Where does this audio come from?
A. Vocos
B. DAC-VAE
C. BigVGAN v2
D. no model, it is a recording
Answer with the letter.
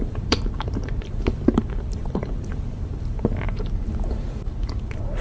C